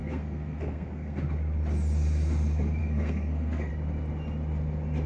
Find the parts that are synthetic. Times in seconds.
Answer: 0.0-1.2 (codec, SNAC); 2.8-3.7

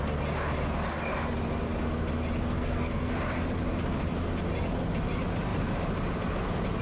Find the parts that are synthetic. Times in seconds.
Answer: 2.5-3.1 (codec, SNAC)

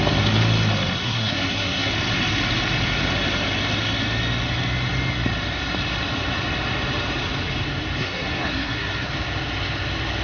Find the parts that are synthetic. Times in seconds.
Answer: 1.0-1.9 (codec, SNAC); 8.0-9.1

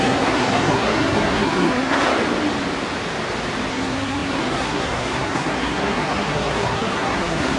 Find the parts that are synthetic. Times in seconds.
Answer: 0.0-2.1 (codec, SNAC); 3.7-7.6

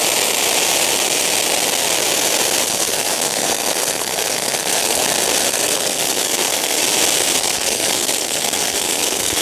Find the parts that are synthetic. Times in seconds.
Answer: 2.6-5.0 (codec, SNAC); 5.5-6.8; 7.4-9.4

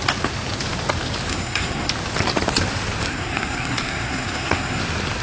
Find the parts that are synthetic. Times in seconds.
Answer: 1.3-1.9 (codec, SNAC); 3.1-4.8

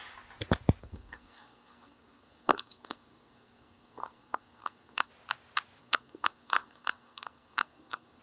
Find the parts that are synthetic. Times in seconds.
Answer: 0.8-5.1 (codec, SNAC); 5.8-8.2

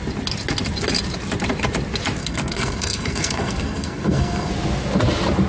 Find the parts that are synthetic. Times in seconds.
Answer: 2.2-4.5 (codec, SNAC)